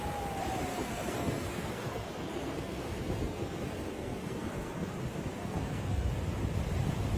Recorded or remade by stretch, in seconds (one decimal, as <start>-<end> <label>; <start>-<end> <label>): 0.0-0.7 recorded; 0.7-4.9 remade; 4.9-5.4 recorded; 5.4-6.1 remade; 6.1-7.2 recorded

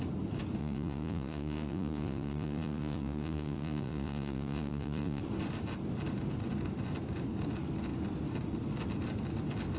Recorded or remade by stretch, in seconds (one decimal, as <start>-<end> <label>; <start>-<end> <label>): 0.0-0.6 recorded; 0.6-5.2 remade; 5.2-9.8 recorded

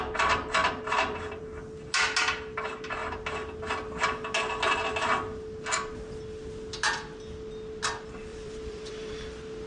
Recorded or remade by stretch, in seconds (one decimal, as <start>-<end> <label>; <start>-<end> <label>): 0.0-0.6 recorded; 0.6-1.4 remade; 1.4-8.3 recorded; 8.3-9.1 remade; 9.1-9.7 recorded

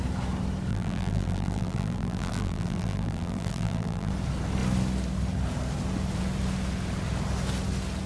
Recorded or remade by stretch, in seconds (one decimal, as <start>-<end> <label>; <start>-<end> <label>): 0.0-0.7 recorded; 0.7-4.1 remade; 4.1-8.1 recorded

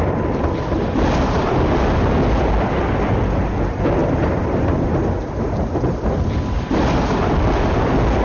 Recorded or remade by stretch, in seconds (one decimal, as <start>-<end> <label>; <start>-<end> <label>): 0.0-4.0 recorded; 4.0-4.9 remade; 4.9-8.2 recorded